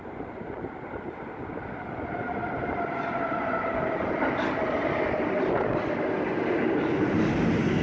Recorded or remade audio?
recorded